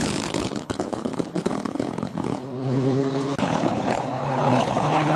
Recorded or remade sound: remade